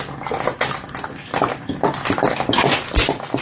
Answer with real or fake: real